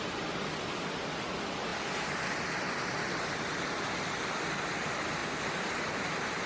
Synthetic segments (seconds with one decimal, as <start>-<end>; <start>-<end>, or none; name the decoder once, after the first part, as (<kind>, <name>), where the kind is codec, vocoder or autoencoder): none